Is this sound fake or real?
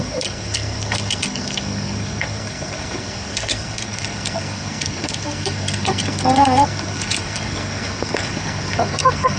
fake